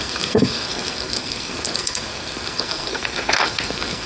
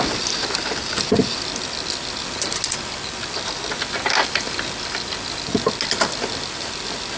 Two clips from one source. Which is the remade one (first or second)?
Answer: first